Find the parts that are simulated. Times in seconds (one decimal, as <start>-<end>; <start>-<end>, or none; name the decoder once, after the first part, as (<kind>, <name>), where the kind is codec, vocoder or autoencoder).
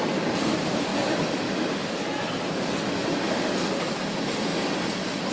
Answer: 0.0-0.9 (vocoder, BigVGAN v2); 4.1-4.5